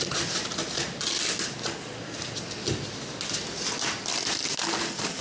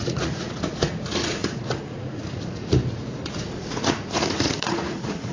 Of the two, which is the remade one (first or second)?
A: second